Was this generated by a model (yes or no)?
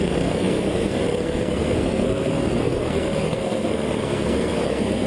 yes